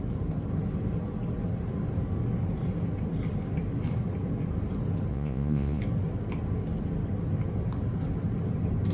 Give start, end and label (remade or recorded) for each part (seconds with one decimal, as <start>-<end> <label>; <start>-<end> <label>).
0.0-5.1 recorded; 5.1-5.8 remade; 5.8-8.9 recorded